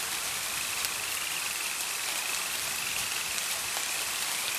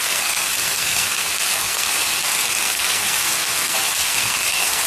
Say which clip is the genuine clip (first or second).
first